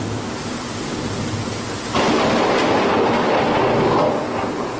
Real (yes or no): yes